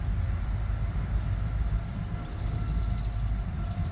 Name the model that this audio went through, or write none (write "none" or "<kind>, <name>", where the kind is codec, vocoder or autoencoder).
none